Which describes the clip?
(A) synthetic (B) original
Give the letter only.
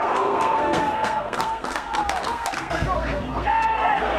A